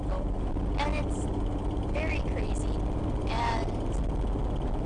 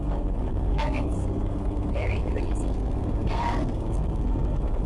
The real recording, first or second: first